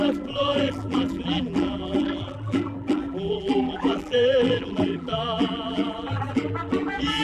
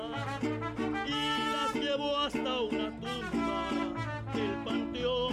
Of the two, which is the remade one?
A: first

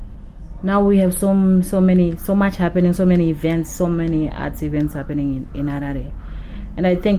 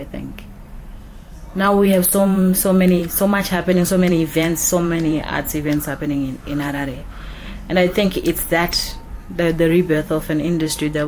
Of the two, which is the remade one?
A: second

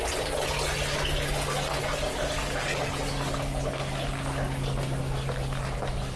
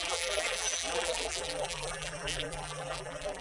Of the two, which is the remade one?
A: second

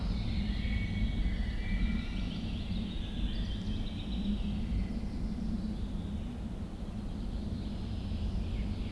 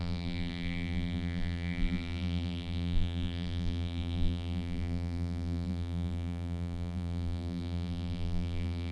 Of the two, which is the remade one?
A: second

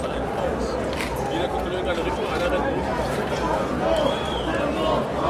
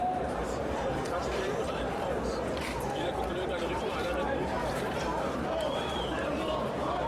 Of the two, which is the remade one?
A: second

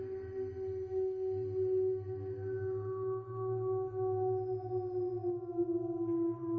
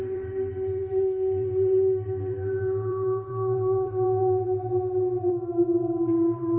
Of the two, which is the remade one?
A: second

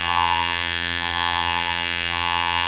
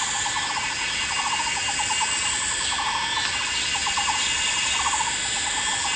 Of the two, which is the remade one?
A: first